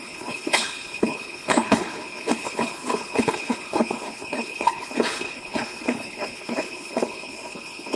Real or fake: fake